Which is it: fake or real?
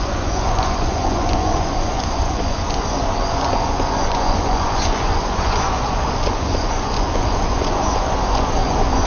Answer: fake